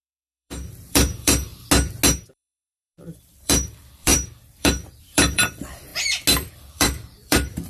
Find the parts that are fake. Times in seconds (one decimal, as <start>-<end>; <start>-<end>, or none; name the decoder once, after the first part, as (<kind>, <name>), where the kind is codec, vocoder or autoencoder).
0.0-1.5 (vocoder, BigVGAN v2); 2.3-5.9; 6.5-7.7